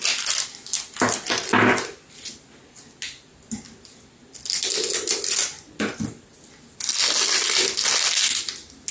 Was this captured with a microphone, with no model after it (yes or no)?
yes